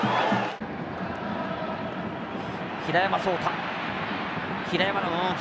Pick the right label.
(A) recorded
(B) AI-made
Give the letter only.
A